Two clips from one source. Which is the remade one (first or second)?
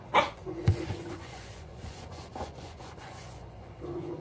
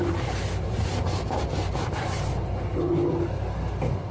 first